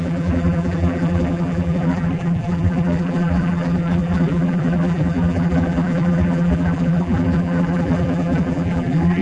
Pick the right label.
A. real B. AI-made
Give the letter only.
B